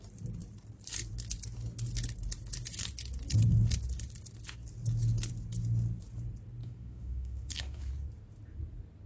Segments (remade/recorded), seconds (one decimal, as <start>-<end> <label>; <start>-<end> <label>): 0.0-6.6 recorded; 6.6-7.9 remade; 7.9-9.1 recorded